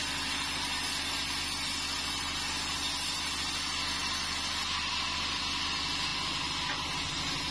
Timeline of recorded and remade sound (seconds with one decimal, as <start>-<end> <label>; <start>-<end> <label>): 0.0-7.5 recorded